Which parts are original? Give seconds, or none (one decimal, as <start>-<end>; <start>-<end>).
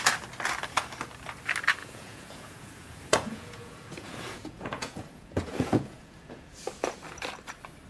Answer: 0.0-1.8; 6.5-7.9